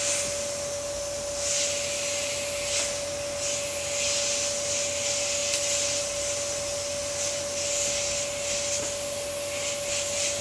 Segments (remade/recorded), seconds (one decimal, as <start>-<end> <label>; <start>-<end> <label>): 0.0-10.4 recorded